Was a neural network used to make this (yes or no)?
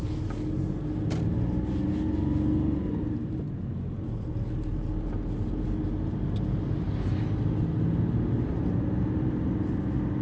no